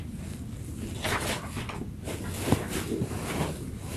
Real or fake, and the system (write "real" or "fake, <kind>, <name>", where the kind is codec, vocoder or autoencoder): real